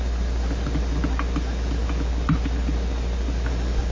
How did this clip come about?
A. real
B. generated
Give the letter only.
A